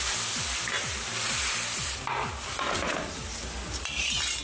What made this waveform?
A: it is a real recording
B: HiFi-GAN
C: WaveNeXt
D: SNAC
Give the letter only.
A